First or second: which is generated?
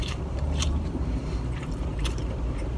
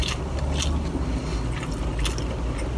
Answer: first